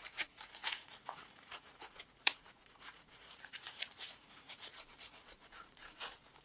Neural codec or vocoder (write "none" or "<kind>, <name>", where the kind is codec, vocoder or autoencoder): vocoder, Vocos